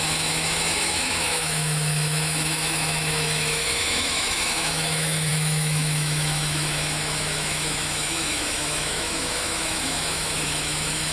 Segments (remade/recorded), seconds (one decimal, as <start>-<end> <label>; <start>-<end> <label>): 0.0-11.1 remade

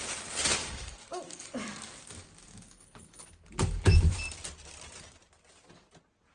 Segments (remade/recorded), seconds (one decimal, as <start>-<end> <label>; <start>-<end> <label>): 0.0-0.6 recorded; 0.6-4.1 remade; 4.1-6.3 recorded

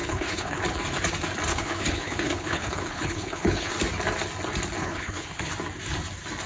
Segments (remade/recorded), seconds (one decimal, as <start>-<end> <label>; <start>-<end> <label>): 0.0-0.6 remade; 0.6-1.5 recorded; 1.5-3.7 remade; 3.7-4.8 recorded; 4.8-5.5 remade; 5.5-6.5 recorded

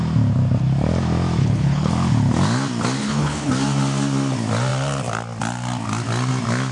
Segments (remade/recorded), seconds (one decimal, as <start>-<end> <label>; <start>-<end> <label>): 0.0-1.4 recorded; 1.4-1.9 remade; 1.9-3.0 recorded; 3.0-3.5 remade; 3.5-6.7 recorded